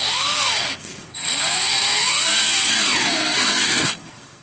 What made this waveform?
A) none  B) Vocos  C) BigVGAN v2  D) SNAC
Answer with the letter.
D